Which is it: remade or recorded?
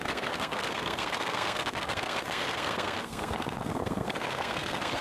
remade